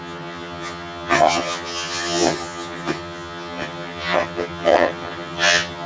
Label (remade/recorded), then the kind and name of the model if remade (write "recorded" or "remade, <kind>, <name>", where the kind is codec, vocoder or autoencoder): remade, vocoder, HiFi-GAN